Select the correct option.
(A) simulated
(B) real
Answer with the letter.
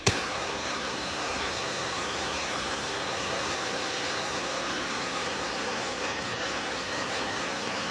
A